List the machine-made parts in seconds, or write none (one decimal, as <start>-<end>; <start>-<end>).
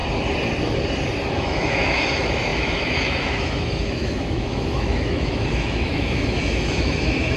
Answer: 1.3-7.4